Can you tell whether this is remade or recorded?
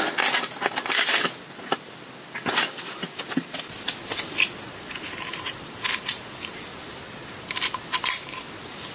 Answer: recorded